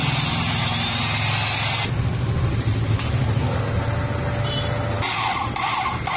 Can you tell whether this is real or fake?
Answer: real